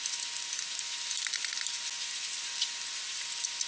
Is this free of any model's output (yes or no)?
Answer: yes